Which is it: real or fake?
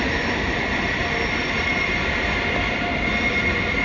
real